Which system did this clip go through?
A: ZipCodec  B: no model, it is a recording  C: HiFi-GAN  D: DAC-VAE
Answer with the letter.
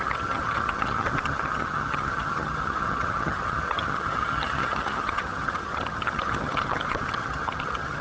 C